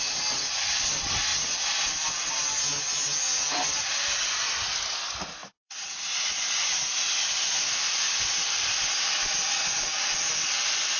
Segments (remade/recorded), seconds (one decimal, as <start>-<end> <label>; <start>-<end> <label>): 0.0-5.4 recorded; 5.4-7.1 remade; 7.1-11.0 recorded